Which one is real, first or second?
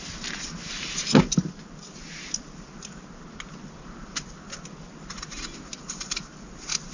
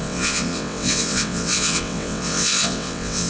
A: first